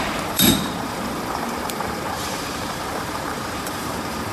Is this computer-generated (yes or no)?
yes